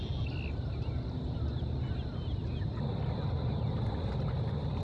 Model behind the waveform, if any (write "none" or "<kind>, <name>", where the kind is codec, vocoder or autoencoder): none